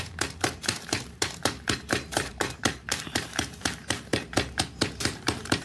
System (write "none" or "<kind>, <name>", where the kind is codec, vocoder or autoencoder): vocoder, BigVGAN v2